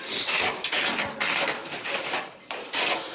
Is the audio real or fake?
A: real